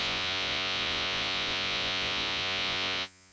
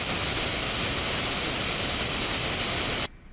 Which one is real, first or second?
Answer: second